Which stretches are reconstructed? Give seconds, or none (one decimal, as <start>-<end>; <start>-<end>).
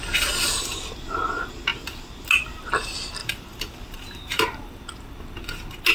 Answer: 3.2-4.8